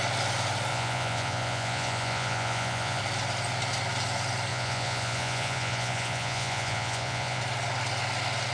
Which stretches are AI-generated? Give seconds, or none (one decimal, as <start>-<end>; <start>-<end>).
0.7-3.0; 4.5-7.4